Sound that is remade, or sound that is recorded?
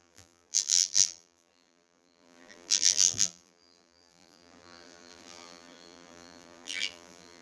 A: remade